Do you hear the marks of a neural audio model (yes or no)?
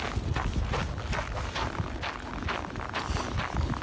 no